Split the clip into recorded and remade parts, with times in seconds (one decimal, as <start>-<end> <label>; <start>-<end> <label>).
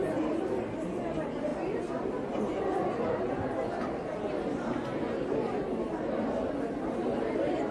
0.0-1.5 remade; 1.5-3.6 recorded; 3.6-4.9 remade; 4.9-7.3 recorded; 7.3-7.7 remade